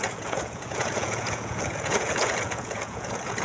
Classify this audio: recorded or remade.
remade